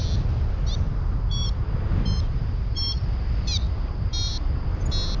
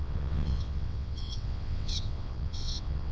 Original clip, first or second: first